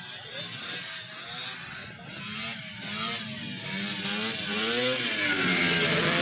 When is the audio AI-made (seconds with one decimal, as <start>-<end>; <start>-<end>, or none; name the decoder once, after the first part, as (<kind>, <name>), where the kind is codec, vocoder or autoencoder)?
none